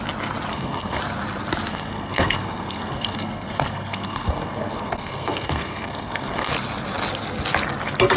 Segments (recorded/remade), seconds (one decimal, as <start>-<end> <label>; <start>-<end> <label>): 0.0-0.5 recorded; 0.5-1.0 remade; 1.0-1.7 recorded; 1.7-6.5 remade; 6.5-8.2 recorded